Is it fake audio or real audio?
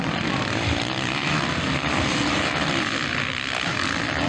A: fake